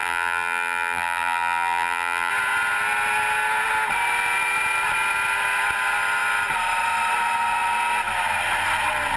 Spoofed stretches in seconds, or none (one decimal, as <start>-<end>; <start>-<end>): 0.0-2.3